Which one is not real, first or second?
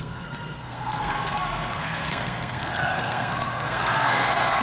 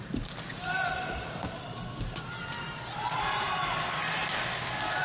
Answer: first